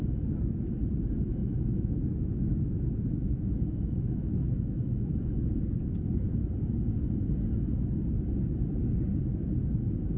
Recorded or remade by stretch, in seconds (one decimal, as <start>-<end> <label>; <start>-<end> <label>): 0.0-1.4 recorded; 1.4-5.3 remade; 5.3-10.2 recorded